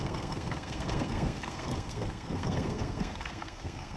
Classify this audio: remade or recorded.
remade